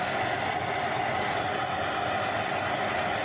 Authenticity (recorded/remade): recorded